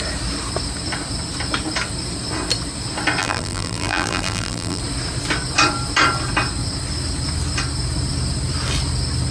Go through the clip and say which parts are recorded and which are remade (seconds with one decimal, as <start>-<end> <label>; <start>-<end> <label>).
0.0-3.2 recorded; 3.2-4.8 remade; 4.8-9.3 recorded